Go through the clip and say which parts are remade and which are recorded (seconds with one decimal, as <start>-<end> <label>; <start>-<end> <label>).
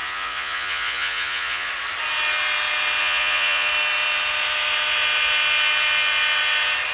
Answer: 0.0-1.7 remade; 1.7-3.0 recorded; 3.0-3.7 remade; 3.7-6.9 recorded